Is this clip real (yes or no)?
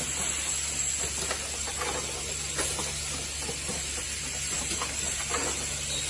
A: yes